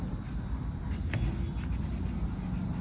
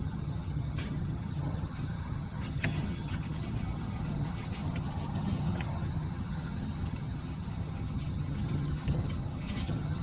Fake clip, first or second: second